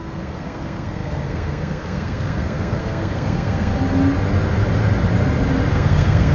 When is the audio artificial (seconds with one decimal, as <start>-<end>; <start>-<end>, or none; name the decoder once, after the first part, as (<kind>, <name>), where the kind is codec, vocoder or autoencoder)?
0.0-3.7 (codec, SNAC); 5.7-6.3